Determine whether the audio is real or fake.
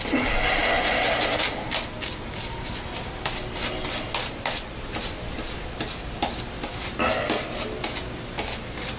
real